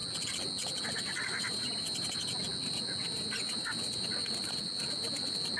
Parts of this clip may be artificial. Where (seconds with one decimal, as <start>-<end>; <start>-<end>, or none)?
none